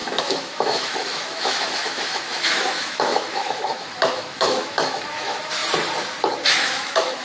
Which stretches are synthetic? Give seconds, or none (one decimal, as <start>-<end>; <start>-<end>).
0.0-5.6; 6.5-7.2

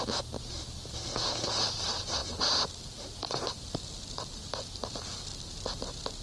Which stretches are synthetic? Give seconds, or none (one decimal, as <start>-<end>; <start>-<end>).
none

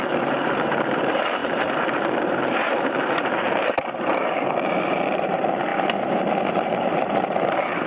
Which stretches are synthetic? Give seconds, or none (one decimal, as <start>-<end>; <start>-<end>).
0.0-5.7; 6.5-7.9

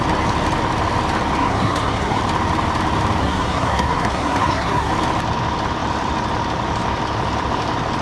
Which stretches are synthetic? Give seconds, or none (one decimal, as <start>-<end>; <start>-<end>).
1.4-2.2; 3.2-4.9

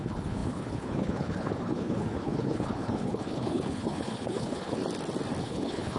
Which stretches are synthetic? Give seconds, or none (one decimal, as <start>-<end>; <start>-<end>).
0.0-4.8; 5.4-6.0

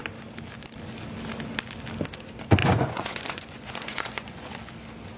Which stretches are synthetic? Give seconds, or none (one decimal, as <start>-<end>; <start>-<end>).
2.6-4.5

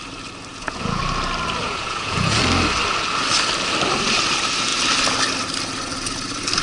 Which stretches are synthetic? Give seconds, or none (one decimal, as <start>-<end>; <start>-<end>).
0.5-1.0; 1.6-2.4